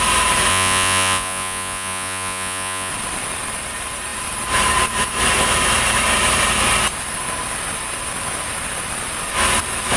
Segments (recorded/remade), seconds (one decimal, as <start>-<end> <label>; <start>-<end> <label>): 0.0-0.5 recorded; 0.5-2.9 remade; 2.9-10.0 recorded